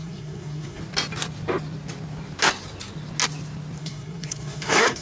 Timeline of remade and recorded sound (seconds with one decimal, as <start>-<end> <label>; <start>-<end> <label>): 0.0-0.8 remade; 0.8-3.8 recorded; 3.8-5.0 remade